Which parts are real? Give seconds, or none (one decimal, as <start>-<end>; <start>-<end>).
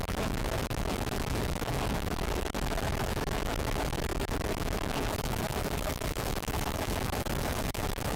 none